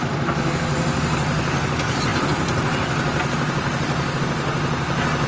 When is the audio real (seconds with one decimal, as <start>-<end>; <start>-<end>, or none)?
0.0-5.3